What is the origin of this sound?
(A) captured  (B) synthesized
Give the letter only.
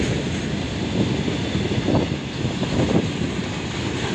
A